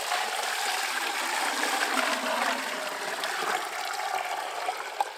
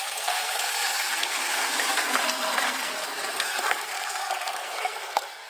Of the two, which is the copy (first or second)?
second